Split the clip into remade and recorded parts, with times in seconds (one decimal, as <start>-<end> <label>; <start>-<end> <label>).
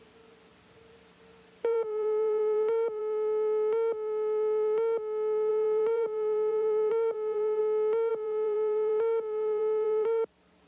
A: 0.0-0.5 recorded; 0.5-3.0 remade; 3.0-5.5 recorded; 5.5-7.6 remade; 7.6-8.1 recorded; 8.1-10.7 remade